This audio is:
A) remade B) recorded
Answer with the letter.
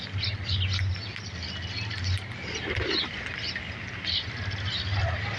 B